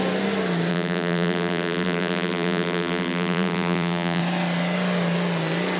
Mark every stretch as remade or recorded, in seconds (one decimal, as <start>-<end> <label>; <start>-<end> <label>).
0.0-0.7 recorded; 0.7-4.2 remade; 4.2-5.8 recorded